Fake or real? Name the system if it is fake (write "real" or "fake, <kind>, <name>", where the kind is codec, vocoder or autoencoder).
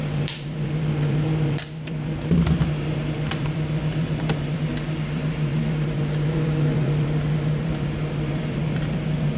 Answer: fake, vocoder, BigVGAN v2